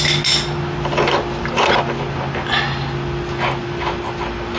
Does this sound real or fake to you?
real